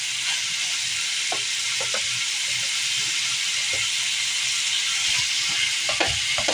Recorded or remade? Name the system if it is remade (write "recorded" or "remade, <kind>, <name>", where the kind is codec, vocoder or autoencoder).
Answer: recorded